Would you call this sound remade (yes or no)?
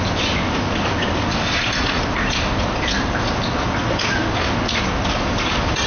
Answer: yes